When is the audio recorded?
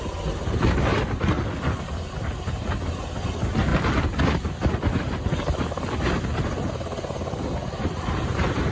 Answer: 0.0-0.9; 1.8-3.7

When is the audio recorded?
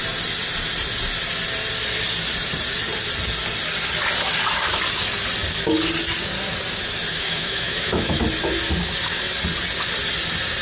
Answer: 0.0-7.1; 8.2-10.6